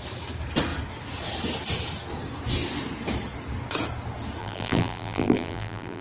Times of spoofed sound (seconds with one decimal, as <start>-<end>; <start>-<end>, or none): 4.4-6.0